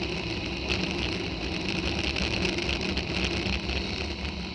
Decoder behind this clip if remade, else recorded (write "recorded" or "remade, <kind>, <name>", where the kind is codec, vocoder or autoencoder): recorded